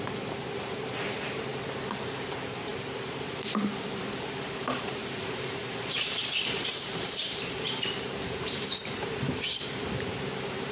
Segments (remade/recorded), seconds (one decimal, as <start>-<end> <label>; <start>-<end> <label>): 0.0-1.5 remade; 1.5-2.2 recorded; 2.2-10.7 remade